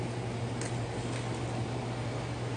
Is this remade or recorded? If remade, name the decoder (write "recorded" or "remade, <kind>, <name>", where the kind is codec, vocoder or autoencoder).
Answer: recorded